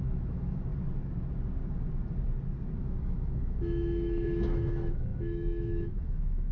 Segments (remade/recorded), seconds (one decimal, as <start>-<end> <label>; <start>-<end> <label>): 0.0-0.7 remade; 0.7-2.8 recorded; 2.8-6.5 remade